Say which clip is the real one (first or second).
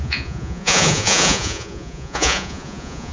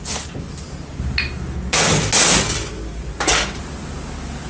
second